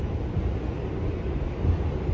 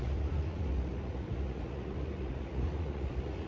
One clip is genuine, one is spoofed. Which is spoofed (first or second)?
second